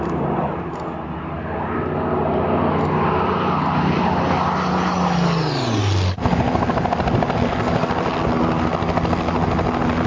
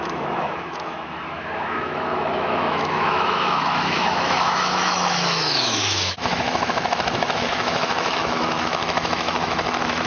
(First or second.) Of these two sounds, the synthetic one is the second